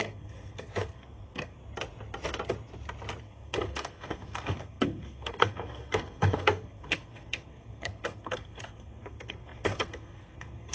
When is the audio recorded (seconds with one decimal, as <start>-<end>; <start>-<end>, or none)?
1.6-3.2